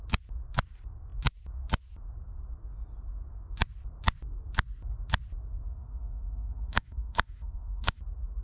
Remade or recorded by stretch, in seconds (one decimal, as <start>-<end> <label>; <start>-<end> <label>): 0.0-5.5 recorded; 5.5-8.0 remade; 8.0-8.4 recorded